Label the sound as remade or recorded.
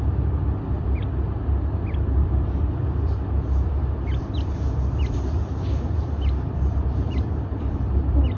remade